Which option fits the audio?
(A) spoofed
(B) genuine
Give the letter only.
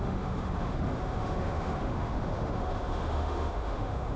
A